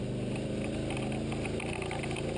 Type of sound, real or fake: real